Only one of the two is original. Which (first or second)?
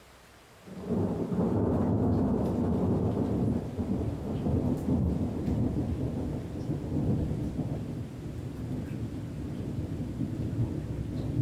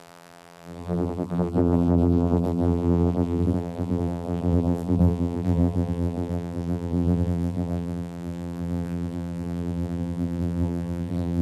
first